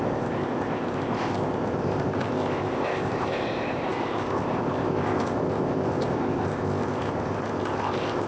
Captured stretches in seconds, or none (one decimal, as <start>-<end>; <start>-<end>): none

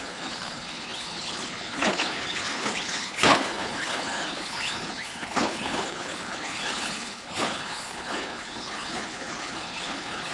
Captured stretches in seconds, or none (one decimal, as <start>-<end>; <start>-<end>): none

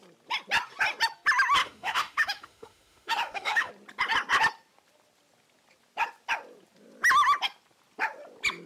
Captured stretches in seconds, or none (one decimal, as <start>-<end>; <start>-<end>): 0.0-1.6; 3.7-8.7

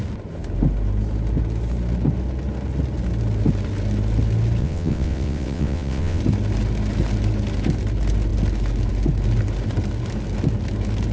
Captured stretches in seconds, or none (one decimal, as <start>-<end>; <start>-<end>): 0.0-4.6; 6.2-11.1

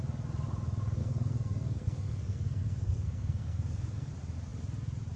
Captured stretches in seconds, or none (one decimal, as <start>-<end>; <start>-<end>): 0.0-1.0; 4.1-5.2

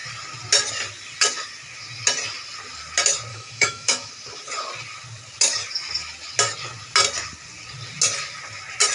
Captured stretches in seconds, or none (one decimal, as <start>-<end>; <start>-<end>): 0.0-3.3; 4.1-8.9

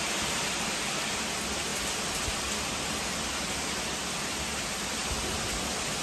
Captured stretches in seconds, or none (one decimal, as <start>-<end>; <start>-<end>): 0.0-6.0

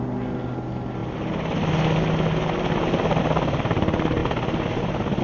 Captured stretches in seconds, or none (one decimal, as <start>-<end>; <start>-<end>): 0.0-5.2